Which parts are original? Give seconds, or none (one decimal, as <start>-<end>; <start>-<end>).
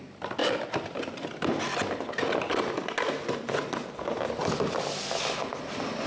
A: 0.0-6.1